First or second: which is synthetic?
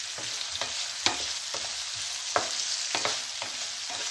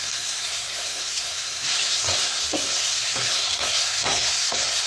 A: second